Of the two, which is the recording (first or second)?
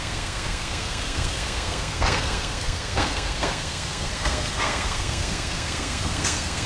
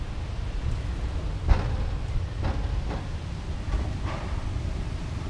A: second